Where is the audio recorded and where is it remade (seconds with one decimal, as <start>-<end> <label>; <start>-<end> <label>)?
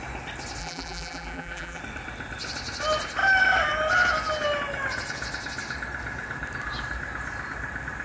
0.0-0.6 recorded; 0.6-1.8 remade; 1.8-8.0 recorded